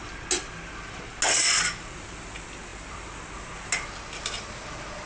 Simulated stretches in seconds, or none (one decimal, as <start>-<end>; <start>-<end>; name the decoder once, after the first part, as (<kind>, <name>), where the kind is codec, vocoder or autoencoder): none